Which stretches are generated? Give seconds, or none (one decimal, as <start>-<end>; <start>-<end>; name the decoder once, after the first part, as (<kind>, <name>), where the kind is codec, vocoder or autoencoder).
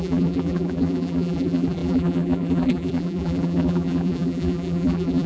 0.0-5.3 (vocoder, BigVGAN v2)